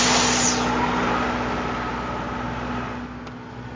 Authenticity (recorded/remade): recorded